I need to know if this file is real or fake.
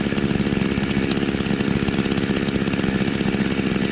real